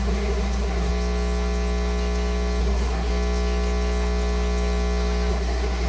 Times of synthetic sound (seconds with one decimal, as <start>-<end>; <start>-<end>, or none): 0.0-0.9; 2.6-3.1; 5.3-5.9

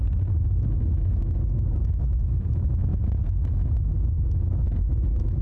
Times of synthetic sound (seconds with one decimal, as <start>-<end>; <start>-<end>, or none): none